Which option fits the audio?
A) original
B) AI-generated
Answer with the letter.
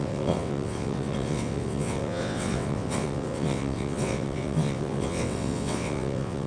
B